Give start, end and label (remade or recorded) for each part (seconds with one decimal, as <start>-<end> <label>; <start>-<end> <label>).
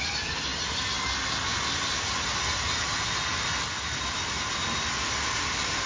0.0-5.9 recorded